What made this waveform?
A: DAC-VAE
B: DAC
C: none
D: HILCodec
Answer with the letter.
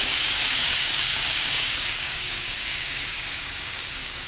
B